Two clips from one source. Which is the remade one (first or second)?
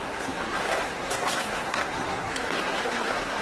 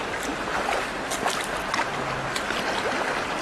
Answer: first